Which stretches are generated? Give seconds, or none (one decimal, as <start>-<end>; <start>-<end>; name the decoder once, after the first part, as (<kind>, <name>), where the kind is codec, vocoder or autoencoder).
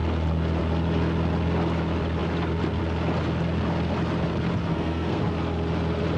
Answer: 4.7-5.2 (codec, SNAC)